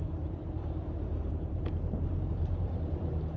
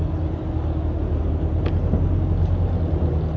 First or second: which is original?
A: second